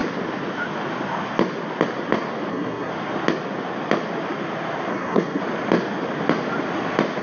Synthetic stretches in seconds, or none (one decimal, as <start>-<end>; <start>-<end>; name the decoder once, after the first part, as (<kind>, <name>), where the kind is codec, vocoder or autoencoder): 2.5-2.9 (codec, SNAC); 4.9-5.4